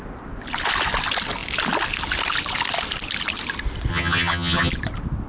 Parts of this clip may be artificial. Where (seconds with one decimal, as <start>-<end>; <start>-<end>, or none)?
3.9-4.7